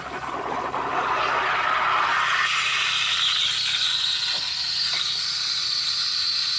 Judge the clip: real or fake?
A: real